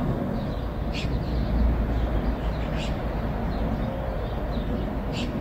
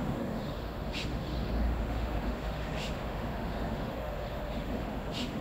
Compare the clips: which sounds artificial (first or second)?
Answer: second